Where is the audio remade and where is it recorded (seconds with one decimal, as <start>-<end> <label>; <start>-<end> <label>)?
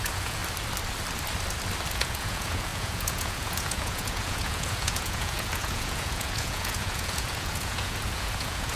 0.0-0.4 remade; 0.4-1.9 recorded; 1.9-8.8 remade